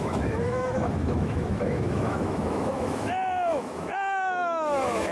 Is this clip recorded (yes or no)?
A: no